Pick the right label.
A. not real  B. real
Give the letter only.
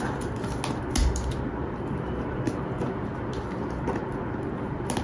B